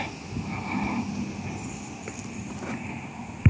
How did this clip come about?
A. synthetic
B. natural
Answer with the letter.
B